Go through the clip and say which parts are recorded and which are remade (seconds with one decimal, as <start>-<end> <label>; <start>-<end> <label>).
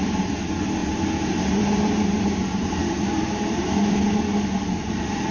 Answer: 0.0-0.8 recorded; 0.8-4.0 remade; 4.0-5.3 recorded